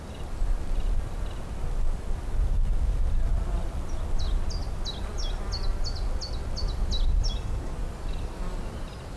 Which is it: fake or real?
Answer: real